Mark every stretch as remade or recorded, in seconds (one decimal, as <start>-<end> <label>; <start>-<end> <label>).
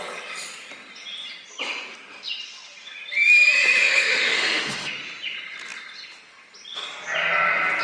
0.0-3.8 recorded; 3.8-4.9 remade; 4.9-7.8 recorded